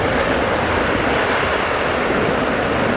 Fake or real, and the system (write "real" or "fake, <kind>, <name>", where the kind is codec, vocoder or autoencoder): real